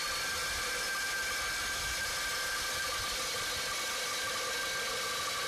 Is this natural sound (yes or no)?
yes